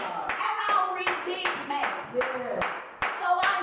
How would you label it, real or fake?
real